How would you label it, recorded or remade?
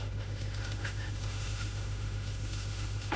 remade